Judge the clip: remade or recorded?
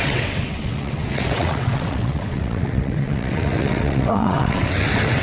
remade